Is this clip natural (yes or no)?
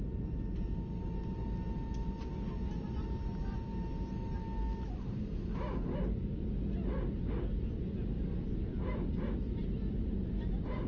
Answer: yes